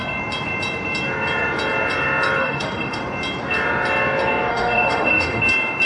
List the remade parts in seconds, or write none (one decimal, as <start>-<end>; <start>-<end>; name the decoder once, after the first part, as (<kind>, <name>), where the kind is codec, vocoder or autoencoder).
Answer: 2.4-3.0 (autoencoder, DAC-VAE); 4.5-5.4